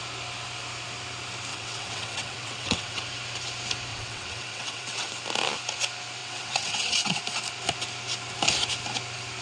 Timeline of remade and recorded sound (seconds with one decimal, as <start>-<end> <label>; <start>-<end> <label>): 0.0-1.5 recorded; 1.5-3.0 remade; 3.0-3.9 recorded; 3.9-5.1 remade; 5.1-6.2 recorded; 6.2-7.2 remade; 7.2-9.4 recorded